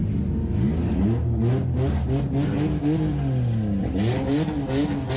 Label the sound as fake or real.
real